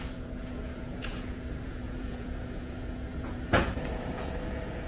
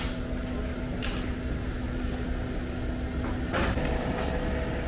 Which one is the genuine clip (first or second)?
second